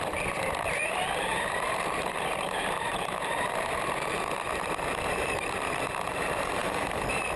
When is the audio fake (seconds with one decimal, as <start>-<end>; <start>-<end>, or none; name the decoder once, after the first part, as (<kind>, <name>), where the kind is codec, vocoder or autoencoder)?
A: 1.3-4.2 (vocoder, BigVGAN v2)